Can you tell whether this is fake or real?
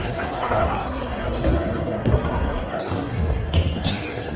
fake